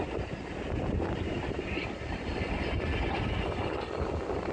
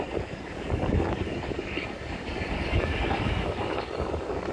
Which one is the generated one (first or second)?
second